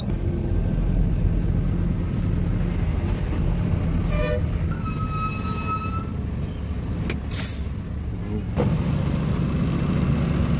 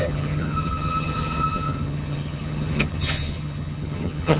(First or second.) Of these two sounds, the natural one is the first